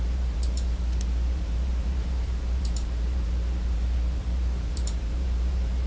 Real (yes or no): no